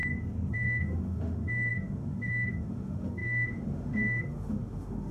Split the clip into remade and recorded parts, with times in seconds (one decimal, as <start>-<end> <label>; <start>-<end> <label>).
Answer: 0.0-0.5 recorded; 0.5-5.1 remade